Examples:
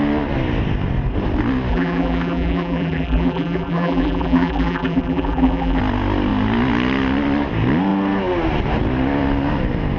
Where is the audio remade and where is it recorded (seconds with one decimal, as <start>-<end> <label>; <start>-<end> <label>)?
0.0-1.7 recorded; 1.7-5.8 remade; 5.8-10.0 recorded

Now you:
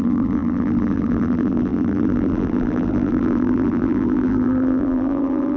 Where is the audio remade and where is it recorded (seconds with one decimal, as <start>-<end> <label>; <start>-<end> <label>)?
0.0-5.6 remade

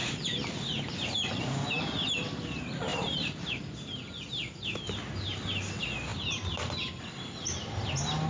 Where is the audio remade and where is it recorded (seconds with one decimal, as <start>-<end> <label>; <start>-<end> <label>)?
0.0-2.9 recorded; 2.9-3.6 remade; 3.6-8.3 recorded